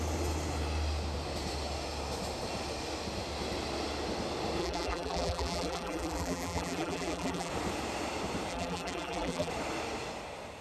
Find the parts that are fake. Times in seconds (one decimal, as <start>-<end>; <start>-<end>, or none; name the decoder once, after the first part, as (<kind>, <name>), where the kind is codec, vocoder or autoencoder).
4.6-7.5 (vocoder, BigVGAN v2); 8.5-9.5